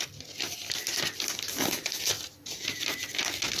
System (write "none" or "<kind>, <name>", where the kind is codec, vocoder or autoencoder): none